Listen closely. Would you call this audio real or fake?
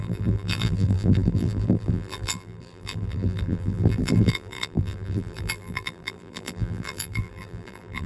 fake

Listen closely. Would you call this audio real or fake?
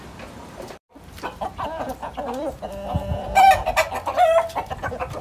fake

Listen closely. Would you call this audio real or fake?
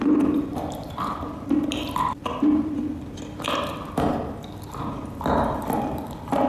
fake